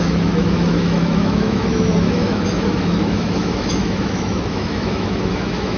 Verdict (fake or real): fake